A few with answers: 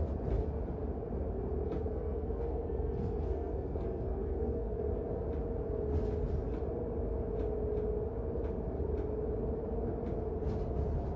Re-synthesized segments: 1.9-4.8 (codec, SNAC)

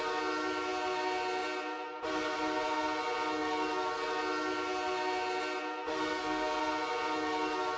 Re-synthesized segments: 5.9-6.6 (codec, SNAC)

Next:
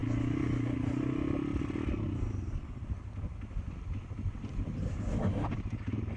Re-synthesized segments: none

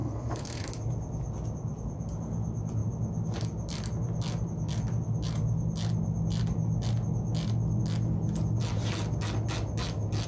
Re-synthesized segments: 0.0-0.6 (codec, SNAC)

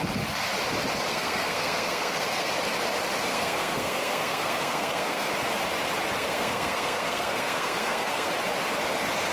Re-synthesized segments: 1.1-2.5 (codec, SNAC); 3.3-5.3; 6.2-8.3

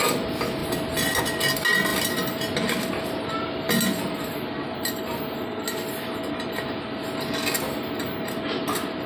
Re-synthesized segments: none

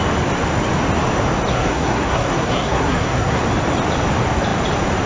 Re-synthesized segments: 1.5-3.4 (codec, SNAC)

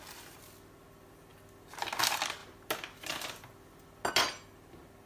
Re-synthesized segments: none